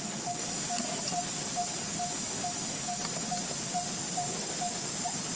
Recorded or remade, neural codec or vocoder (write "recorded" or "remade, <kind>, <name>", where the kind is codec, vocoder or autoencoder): recorded